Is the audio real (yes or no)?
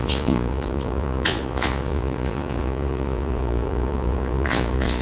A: no